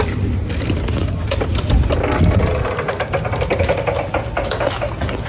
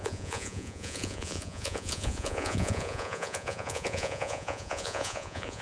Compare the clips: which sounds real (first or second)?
first